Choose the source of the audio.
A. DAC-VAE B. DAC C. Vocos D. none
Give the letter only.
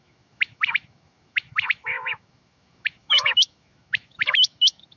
A